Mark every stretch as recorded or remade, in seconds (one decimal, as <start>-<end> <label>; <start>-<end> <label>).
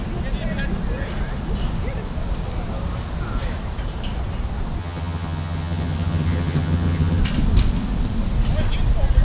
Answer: 0.0-4.8 recorded; 4.8-7.2 remade; 7.2-9.2 recorded